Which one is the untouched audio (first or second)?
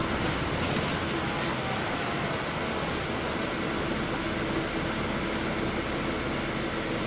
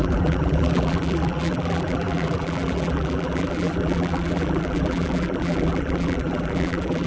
first